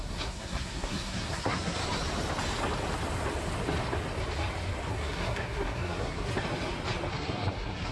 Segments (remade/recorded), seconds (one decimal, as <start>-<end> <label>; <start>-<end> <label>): 0.0-1.8 remade; 1.8-4.9 recorded; 4.9-6.3 remade; 6.3-7.1 recorded; 7.1-7.9 remade